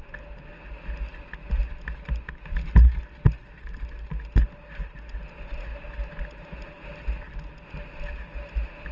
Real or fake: real